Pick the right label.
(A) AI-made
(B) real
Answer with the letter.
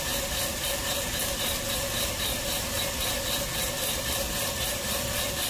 A